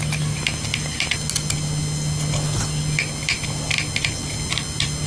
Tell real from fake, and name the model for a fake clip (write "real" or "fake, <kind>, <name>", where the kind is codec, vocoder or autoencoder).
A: real